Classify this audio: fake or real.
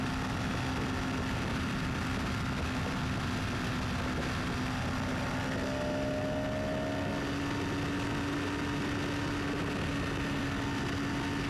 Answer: real